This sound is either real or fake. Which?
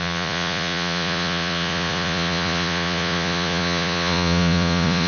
fake